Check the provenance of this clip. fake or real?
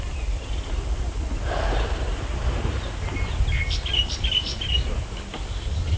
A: real